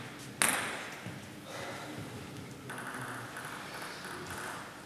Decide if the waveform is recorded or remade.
recorded